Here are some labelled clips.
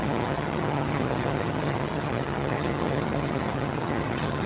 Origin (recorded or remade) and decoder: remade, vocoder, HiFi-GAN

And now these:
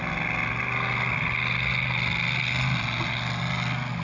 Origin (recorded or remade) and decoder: recorded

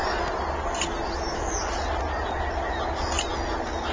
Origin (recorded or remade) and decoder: recorded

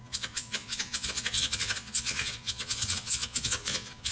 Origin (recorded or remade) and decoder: remade, vocoder, Vocos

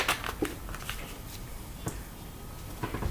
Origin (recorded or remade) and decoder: recorded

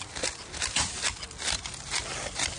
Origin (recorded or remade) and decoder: recorded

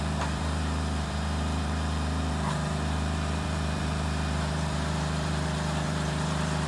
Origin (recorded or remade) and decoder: remade, vocoder, BigVGAN v2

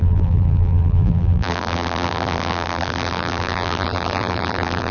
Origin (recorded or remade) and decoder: remade, vocoder, BigVGAN v2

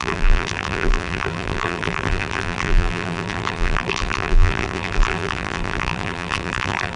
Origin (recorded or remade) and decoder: remade, vocoder, BigVGAN v2